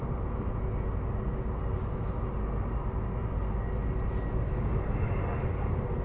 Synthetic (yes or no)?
no